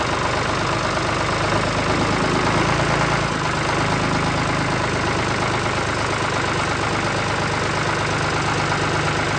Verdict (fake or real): real